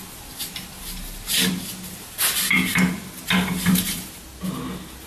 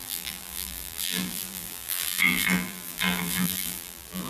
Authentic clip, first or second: first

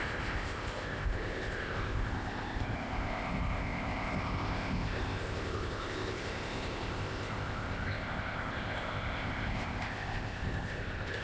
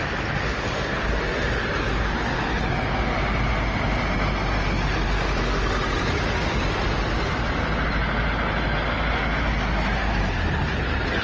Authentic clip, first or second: second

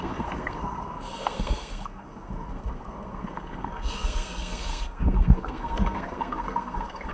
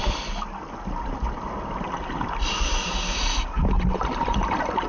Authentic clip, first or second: second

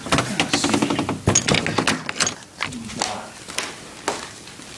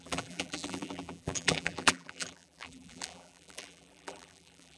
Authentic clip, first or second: first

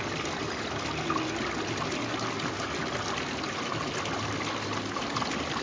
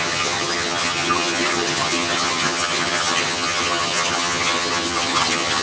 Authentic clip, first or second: first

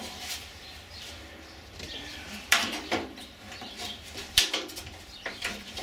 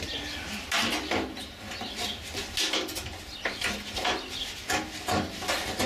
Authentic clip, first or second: second